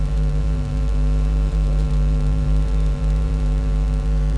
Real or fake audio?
fake